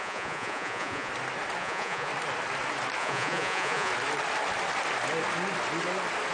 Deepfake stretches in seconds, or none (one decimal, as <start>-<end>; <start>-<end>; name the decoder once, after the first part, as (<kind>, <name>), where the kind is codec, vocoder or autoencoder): 0.0-1.1 (vocoder, Vocos); 1.6-2.1; 3.0-3.9